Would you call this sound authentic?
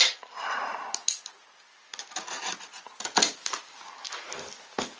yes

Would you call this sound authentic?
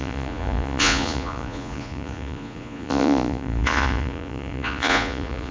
no